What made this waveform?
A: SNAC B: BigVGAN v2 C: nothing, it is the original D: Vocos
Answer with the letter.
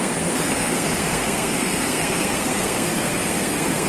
A